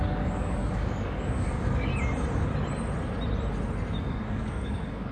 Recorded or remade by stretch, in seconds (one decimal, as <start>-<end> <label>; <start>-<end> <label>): 0.0-1.9 remade; 1.9-4.0 recorded; 4.0-5.1 remade